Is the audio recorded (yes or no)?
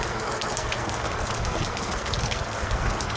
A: no